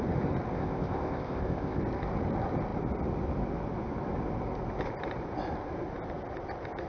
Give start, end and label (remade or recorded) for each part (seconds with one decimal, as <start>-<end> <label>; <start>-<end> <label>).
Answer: 0.0-0.5 recorded; 0.5-1.8 remade; 1.8-6.9 recorded